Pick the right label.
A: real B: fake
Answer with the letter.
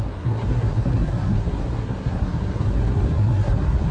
B